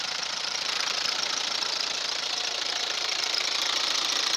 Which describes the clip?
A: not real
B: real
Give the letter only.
A